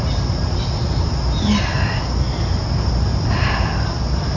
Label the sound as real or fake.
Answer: real